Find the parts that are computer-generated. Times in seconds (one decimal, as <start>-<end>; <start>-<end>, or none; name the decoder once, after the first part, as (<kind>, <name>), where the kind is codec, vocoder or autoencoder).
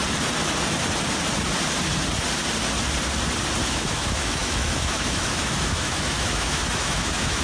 3.7-7.4 (autoencoder, DAC-VAE)